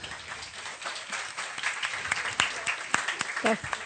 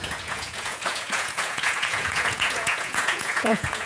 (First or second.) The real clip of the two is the first